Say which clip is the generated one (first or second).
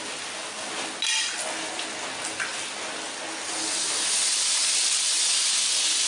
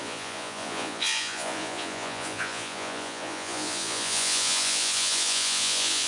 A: second